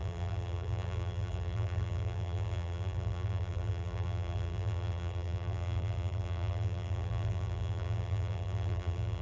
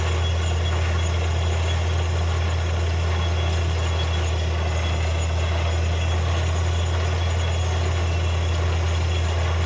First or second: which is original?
second